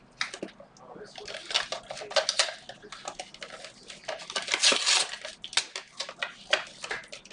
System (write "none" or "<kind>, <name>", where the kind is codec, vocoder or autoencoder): none